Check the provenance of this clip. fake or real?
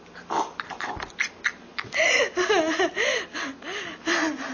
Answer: real